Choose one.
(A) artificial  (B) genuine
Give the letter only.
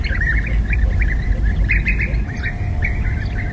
B